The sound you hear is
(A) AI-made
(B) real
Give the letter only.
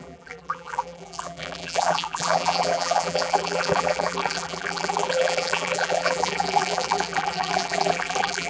A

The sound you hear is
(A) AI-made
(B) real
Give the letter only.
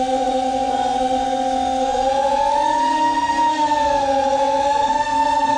A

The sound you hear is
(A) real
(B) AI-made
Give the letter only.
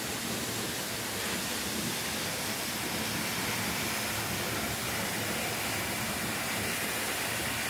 A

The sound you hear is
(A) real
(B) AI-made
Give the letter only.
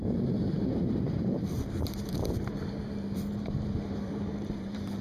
B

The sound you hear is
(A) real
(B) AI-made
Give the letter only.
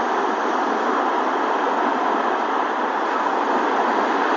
A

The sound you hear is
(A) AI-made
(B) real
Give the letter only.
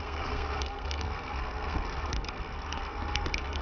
A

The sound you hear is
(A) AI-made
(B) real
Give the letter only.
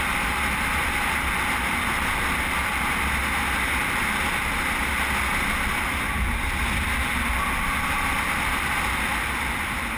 B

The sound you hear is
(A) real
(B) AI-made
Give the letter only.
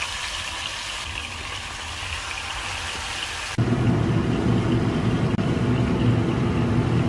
A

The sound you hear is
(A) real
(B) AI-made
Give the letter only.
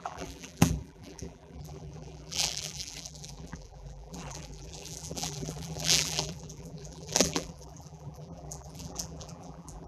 B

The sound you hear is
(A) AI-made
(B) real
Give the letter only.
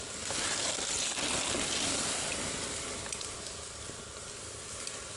B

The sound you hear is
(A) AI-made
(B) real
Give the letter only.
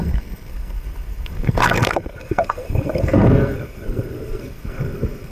A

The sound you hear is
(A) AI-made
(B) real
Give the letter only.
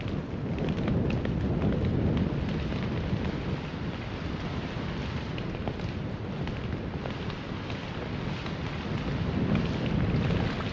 B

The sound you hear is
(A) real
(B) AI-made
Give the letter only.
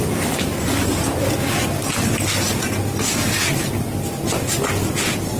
A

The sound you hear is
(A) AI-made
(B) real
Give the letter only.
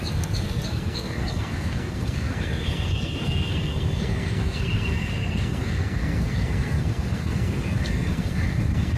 A